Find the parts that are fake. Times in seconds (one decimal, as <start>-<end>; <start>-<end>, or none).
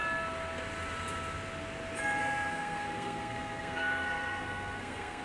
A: 2.2-5.2